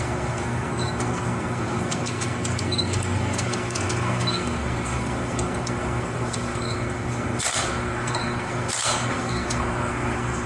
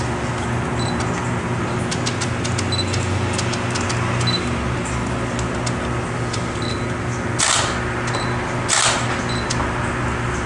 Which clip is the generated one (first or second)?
first